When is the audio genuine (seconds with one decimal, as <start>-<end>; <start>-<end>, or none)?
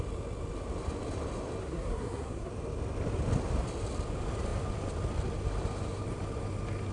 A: 0.0-1.6; 2.5-6.9